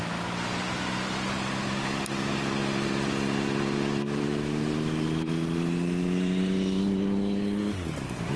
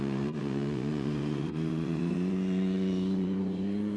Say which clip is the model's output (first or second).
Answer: second